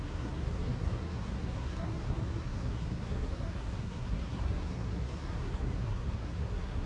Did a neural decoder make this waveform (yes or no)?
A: yes